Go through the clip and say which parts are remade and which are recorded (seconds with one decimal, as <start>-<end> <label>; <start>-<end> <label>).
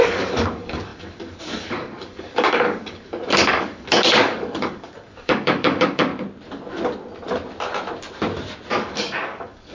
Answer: 0.0-6.1 remade; 6.1-8.7 recorded; 8.7-9.7 remade